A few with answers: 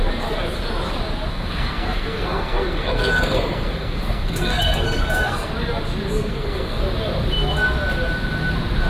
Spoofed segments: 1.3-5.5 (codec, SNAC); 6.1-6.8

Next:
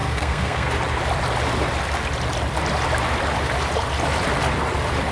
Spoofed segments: 0.0-0.7 (codec, SNAC)

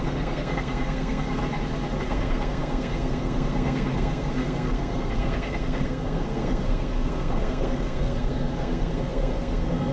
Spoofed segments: 0.0-1.4 (codec, SNAC); 2.0-9.9

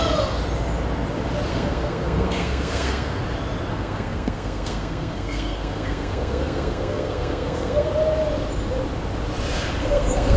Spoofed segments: 1.5-3.2 (codec, SNAC); 3.7-7.9; 9.8-10.4

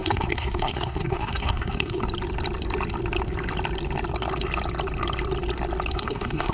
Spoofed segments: 0.0-2.0 (codec, SNAC); 5.9-6.5

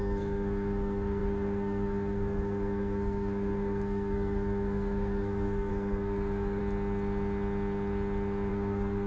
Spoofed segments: 0.0-6.6 (codec, SNAC); 8.5-9.1

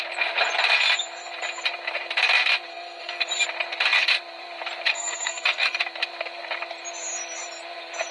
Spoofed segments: 2.7-3.3 (codec, SNAC); 4.9-5.8

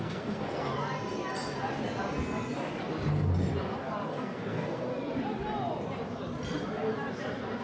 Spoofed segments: 0.0-0.7 (codec, SNAC); 4.1-4.9